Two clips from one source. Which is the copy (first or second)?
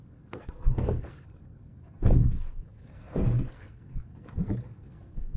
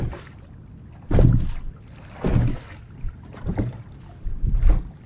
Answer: first